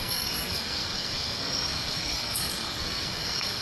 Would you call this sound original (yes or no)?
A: no